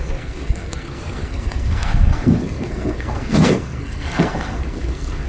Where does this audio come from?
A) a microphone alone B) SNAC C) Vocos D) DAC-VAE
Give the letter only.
B